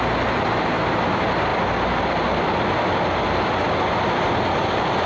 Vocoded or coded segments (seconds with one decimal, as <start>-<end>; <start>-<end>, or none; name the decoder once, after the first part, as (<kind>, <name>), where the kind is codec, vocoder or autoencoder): none

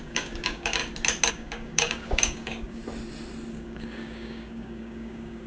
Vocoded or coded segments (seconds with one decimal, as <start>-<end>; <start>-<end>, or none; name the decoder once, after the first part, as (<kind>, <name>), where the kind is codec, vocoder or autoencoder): 0.0-0.8 (codec, DAC); 1.3-2.8; 3.5-5.5

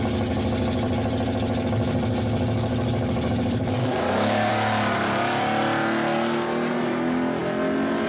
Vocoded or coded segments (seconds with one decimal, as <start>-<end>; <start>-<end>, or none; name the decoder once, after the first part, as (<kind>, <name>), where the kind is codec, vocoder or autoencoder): 3.8-4.5 (codec, DAC)

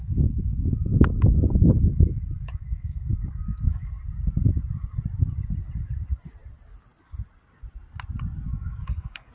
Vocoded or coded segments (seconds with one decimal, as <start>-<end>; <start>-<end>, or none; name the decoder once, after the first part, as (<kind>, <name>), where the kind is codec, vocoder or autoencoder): 0.0-3.9 (codec, DAC); 8.5-9.3

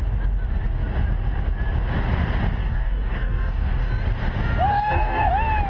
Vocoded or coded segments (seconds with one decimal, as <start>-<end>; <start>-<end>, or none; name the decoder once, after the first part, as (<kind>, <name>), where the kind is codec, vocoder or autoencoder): 2.6-3.9 (codec, DAC); 4.7-5.3

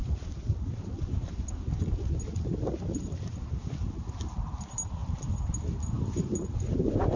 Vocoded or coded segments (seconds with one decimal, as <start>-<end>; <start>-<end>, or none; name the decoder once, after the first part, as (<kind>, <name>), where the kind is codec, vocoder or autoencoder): none

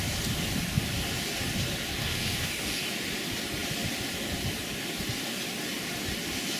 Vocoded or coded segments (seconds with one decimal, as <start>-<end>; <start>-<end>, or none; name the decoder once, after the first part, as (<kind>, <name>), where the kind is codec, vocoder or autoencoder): 2.0-2.9 (codec, DAC)

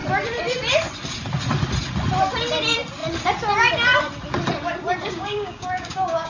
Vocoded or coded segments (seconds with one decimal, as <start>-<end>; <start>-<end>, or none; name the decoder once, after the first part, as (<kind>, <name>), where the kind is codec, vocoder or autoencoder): 5.0-6.3 (codec, DAC)